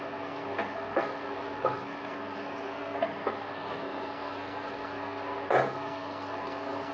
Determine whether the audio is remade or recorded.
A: remade